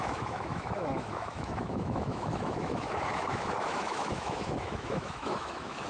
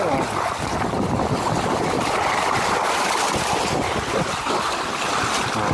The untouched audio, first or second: second